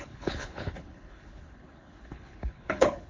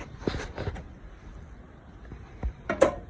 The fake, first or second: first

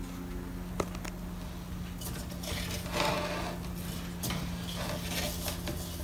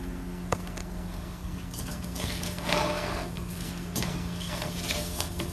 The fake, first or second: second